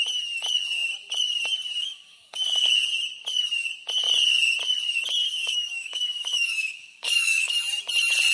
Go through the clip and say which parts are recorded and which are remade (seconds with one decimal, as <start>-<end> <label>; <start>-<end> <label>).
0.0-1.8 recorded; 1.8-2.7 remade; 2.7-5.2 recorded; 5.2-7.6 remade; 7.6-8.3 recorded